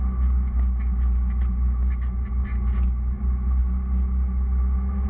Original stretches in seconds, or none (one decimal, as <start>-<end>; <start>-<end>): 0.0-5.1